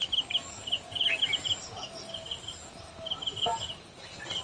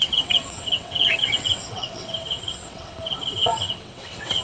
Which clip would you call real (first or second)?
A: first